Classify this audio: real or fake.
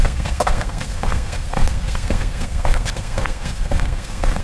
fake